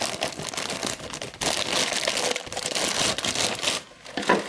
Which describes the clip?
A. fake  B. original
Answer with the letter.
B